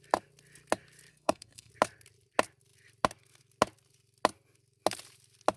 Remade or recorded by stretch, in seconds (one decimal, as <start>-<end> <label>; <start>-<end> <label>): 0.0-1.1 recorded; 1.1-1.7 remade; 1.7-5.6 recorded